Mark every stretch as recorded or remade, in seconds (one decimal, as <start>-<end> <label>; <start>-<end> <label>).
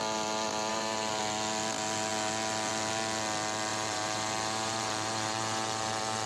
0.0-0.7 recorded; 0.7-1.2 remade; 1.2-3.7 recorded; 3.7-6.3 remade